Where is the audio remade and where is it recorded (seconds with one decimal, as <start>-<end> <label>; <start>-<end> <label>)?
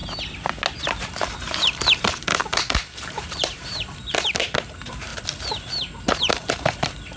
0.0-0.8 recorded; 0.8-7.2 remade